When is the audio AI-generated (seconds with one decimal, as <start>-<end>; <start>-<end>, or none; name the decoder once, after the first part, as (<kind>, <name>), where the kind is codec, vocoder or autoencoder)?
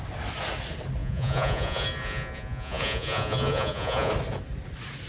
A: 1.0-4.1 (vocoder, Vocos)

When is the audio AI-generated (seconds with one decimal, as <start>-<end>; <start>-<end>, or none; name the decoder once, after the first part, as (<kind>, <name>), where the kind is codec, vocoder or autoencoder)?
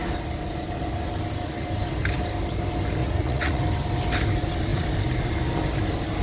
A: 3.0-3.6 (vocoder, Vocos)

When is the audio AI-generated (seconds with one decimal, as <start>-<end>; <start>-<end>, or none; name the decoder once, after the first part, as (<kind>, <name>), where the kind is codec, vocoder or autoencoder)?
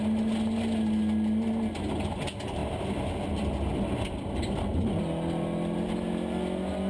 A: none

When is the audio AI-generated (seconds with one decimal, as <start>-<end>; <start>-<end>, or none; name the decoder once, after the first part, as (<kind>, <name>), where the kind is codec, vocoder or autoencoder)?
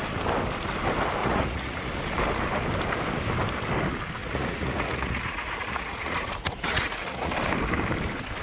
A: 1.2-1.9 (vocoder, Vocos); 4.2-7.3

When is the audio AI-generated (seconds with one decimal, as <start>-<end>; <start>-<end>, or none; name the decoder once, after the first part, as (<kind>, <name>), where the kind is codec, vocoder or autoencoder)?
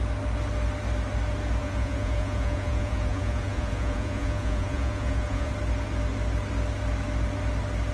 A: 1.6-5.5 (vocoder, Vocos)